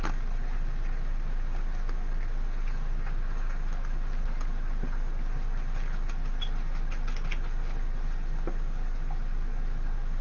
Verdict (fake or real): real